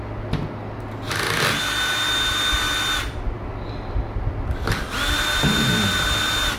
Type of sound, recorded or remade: recorded